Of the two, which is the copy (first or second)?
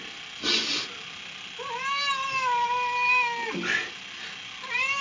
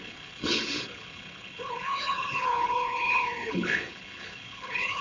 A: second